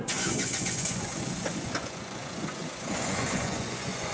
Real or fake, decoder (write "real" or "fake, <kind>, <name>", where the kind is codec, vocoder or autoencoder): fake, vocoder, Vocos